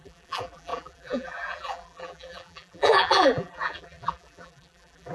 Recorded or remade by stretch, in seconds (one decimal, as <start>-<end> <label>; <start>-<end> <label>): 0.0-5.1 remade